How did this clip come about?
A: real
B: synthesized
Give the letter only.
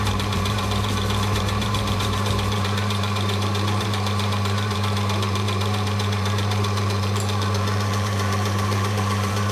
B